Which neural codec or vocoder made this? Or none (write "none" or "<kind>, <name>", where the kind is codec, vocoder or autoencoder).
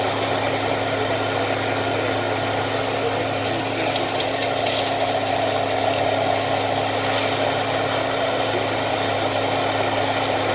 none